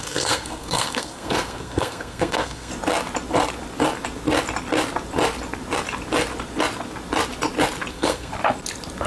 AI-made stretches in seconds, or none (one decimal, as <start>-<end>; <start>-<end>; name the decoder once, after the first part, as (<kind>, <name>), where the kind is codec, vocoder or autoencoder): 0.0-2.7 (codec, SNAC); 7.9-8.3